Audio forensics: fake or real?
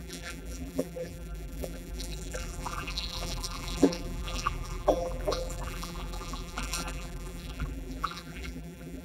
fake